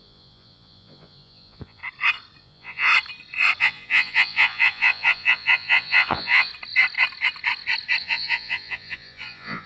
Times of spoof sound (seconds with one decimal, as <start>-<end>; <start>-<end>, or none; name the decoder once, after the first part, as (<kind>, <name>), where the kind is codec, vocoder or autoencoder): 0.0-1.8 (vocoder, Vocos); 2.4-2.9; 3.6-6.5; 8.0-9.7